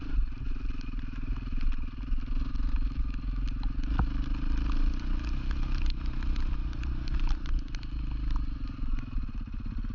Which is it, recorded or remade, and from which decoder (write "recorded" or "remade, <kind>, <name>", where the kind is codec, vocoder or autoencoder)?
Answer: recorded